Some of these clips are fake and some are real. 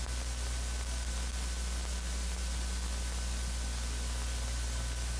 real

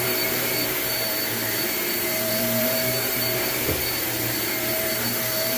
fake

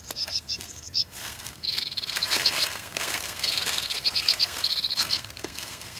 fake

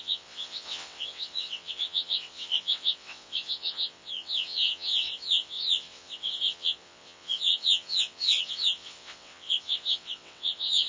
fake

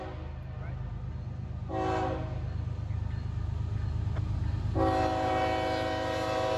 real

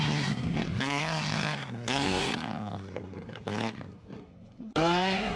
fake